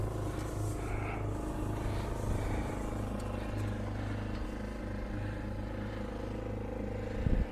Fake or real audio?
real